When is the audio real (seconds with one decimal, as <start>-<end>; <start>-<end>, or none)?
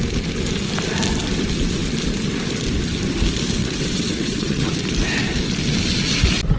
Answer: 0.0-3.6; 4.7-6.6